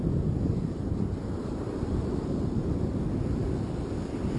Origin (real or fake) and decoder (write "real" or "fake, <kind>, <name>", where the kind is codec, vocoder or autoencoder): real